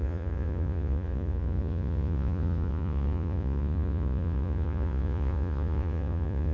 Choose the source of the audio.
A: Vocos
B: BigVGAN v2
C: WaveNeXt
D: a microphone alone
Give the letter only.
A